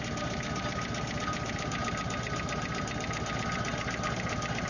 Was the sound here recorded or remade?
recorded